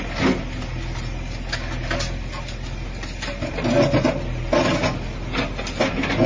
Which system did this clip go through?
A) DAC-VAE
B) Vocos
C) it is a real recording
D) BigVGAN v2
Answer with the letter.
C